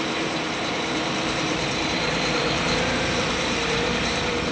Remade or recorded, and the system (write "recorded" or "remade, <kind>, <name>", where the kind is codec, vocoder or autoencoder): remade, vocoder, BigVGAN v2